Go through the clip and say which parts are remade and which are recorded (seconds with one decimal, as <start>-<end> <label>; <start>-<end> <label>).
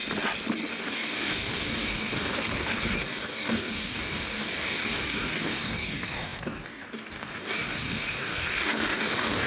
0.0-0.7 recorded; 0.7-9.5 remade